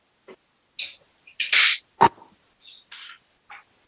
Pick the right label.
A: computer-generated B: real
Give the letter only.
B